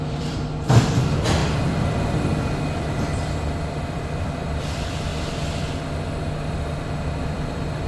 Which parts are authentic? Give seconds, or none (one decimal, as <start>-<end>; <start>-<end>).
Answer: 1.4-3.6; 5.1-7.2